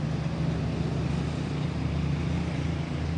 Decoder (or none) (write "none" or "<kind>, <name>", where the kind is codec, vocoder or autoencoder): none